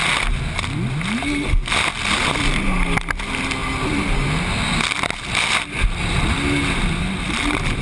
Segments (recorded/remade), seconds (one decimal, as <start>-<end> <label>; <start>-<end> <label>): 0.0-7.0 recorded; 7.0-7.8 remade